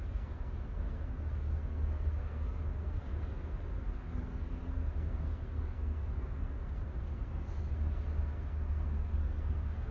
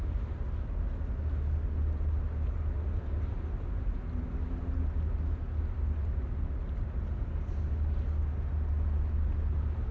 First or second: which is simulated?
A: first